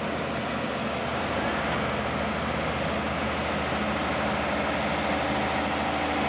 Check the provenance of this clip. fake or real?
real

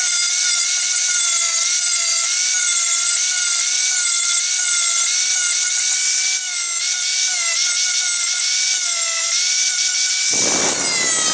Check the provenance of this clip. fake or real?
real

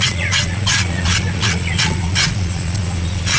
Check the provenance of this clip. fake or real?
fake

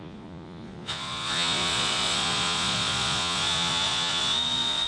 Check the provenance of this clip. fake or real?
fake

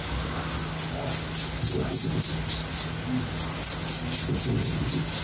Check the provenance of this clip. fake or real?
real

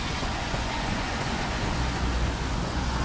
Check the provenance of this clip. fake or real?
fake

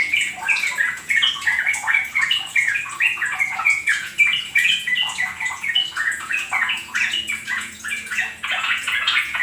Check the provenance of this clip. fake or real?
fake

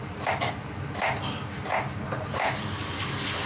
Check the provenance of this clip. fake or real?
real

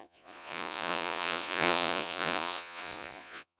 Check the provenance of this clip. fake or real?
fake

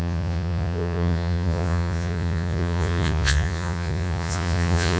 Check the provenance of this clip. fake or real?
fake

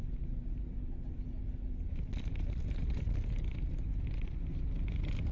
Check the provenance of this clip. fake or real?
real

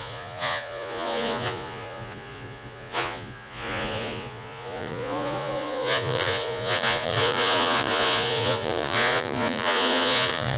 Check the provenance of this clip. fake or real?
fake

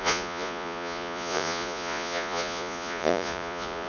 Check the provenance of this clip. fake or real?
fake